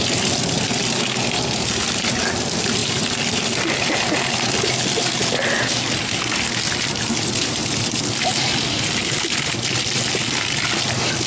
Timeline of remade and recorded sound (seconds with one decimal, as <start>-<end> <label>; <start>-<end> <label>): 0.0-11.3 recorded